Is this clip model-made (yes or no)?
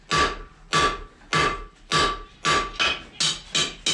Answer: no